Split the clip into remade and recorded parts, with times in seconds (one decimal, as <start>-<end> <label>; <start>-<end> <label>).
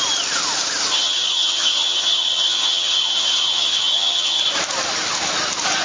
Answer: 0.0-0.9 recorded; 0.9-4.4 remade; 4.4-5.8 recorded